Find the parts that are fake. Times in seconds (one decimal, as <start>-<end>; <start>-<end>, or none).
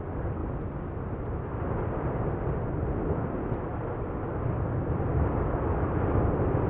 none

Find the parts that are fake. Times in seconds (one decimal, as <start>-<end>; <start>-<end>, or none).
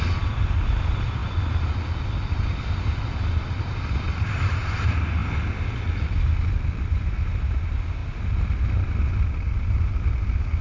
none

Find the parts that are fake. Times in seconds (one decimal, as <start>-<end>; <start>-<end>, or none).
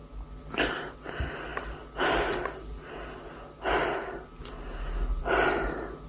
none